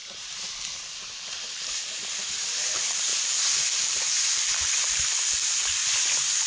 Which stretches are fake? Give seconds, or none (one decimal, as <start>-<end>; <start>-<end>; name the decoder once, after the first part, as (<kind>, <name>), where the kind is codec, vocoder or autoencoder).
0.0-5.8 (vocoder, BigVGAN v2)